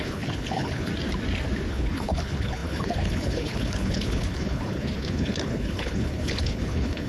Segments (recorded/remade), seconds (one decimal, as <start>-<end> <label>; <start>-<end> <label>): 0.0-0.9 remade; 0.9-1.7 recorded; 1.7-7.1 remade